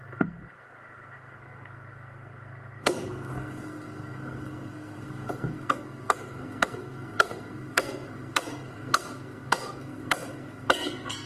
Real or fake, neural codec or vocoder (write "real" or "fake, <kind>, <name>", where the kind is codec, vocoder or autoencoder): fake, codec, SNAC